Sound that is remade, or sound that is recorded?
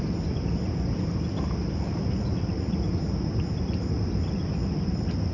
recorded